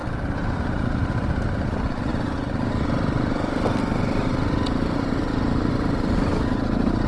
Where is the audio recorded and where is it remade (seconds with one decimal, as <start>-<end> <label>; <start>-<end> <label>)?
0.0-2.1 remade; 2.1-2.8 recorded; 2.8-6.3 remade; 6.3-7.1 recorded